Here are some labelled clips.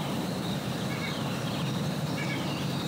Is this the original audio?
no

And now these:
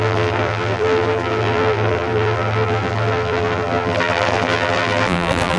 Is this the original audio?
no